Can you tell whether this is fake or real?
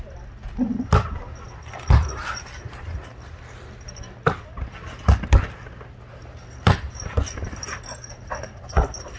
real